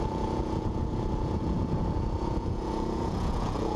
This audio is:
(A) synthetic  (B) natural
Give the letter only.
A